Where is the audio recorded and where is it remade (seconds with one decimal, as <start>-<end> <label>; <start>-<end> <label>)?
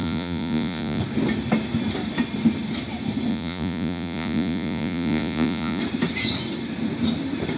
0.0-1.0 remade; 1.0-3.3 recorded; 3.3-5.8 remade; 5.8-7.6 recorded